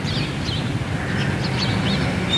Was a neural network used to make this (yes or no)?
no